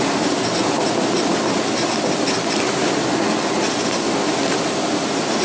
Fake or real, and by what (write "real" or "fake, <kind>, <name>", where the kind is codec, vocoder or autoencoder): real